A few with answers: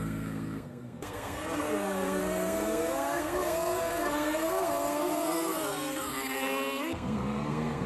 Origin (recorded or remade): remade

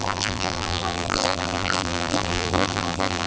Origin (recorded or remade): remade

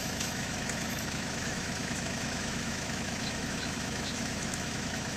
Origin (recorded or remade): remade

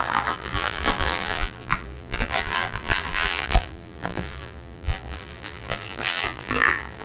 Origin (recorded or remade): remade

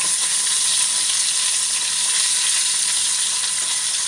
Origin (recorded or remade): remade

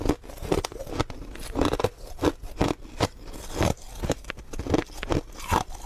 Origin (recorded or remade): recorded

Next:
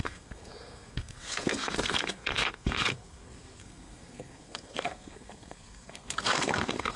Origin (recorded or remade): remade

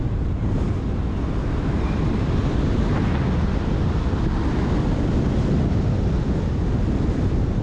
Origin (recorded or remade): recorded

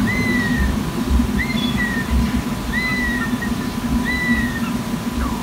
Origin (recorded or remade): recorded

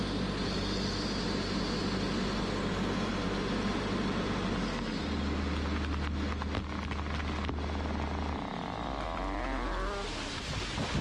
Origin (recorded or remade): recorded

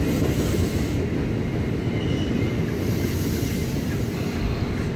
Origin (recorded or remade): recorded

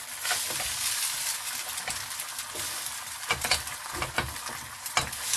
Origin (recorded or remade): recorded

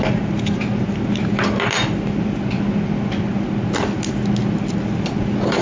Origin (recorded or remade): recorded